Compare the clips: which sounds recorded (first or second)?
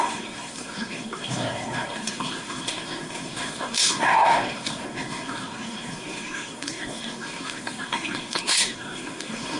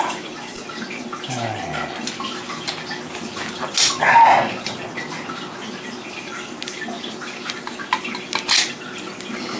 second